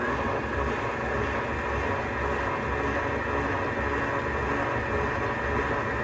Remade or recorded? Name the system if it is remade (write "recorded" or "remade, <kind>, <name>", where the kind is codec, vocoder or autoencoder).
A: recorded